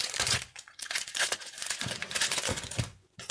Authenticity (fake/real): fake